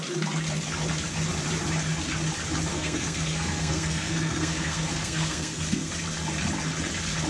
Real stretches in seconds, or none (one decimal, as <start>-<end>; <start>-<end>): 0.0-2.7; 5.9-7.3